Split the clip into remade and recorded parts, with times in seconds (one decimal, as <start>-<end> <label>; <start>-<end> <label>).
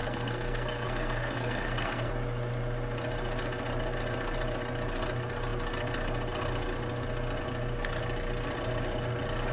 0.0-2.1 remade; 2.1-9.5 recorded